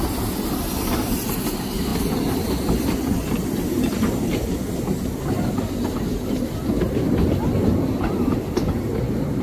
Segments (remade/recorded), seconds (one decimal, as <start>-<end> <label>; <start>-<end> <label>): 0.0-9.4 recorded